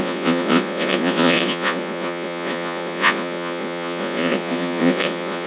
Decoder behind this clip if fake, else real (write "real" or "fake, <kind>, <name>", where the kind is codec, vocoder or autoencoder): fake, vocoder, Vocos